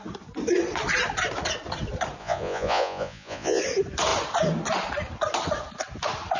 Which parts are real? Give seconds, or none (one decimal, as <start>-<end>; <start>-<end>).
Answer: 0.0-2.2; 3.6-6.4